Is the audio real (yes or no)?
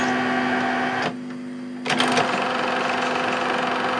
yes